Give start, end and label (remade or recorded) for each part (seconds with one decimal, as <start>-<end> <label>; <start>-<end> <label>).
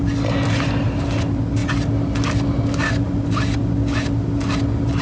0.0-5.0 recorded